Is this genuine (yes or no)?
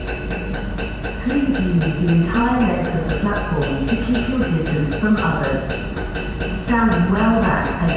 no